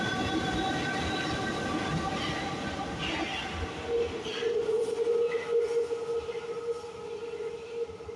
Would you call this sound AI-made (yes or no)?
no